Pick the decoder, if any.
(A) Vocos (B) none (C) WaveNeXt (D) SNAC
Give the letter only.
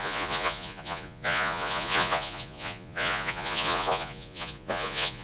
A